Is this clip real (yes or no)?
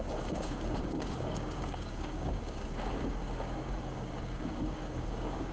no